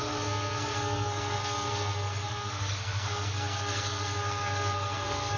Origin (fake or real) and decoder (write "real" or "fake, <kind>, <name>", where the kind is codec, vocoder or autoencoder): fake, codec, SNAC